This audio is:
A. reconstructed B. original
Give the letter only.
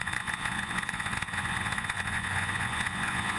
A